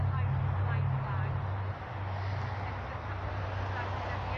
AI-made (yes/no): no